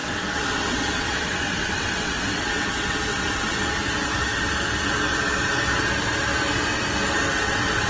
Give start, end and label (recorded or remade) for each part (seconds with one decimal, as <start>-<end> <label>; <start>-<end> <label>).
0.0-3.5 remade; 3.5-7.3 recorded; 7.3-7.9 remade